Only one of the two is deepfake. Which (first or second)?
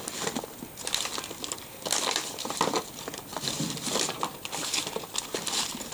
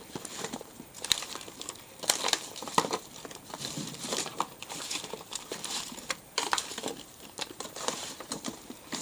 second